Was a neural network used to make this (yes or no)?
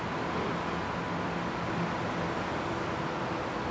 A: no